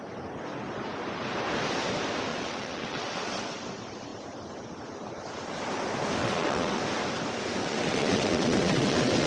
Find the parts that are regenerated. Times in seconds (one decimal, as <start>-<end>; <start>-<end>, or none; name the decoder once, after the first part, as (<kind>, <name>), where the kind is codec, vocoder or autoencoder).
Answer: 2.3-3.6 (vocoder, WaveNeXt); 6.2-6.8; 7.6-9.3